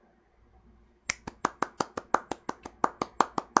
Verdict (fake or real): real